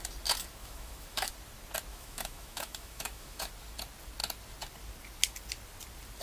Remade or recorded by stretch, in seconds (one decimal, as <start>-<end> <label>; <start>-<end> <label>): 0.0-0.6 recorded; 0.6-1.3 remade; 1.3-1.9 recorded; 1.9-3.5 remade; 3.5-6.2 recorded